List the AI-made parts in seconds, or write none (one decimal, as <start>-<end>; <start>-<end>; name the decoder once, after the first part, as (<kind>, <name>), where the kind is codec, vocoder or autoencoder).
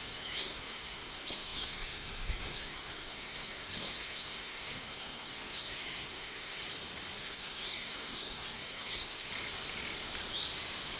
0.0-6.6 (codec, SNAC); 7.2-9.3